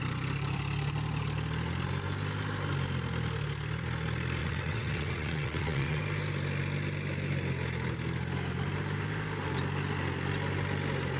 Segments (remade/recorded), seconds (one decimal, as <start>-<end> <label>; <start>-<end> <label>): 0.0-4.4 recorded; 4.4-6.0 remade; 6.0-11.2 recorded